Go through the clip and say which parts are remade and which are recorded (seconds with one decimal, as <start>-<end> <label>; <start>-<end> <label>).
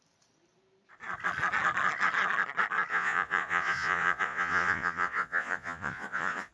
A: 0.0-2.9 recorded; 2.9-6.5 remade